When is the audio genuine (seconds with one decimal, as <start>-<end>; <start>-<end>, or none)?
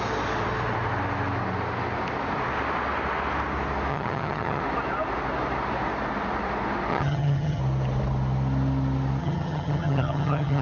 0.0-3.9; 4.6-6.9; 7.6-9.2